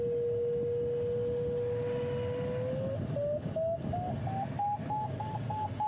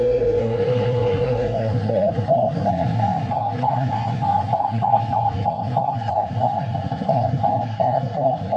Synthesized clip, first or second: second